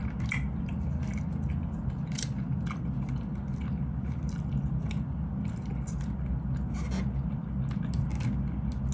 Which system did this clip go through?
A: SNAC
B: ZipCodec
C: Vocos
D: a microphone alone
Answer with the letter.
D